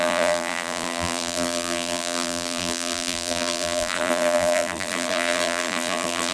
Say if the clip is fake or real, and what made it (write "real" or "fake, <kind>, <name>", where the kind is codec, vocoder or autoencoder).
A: fake, vocoder, BigVGAN v2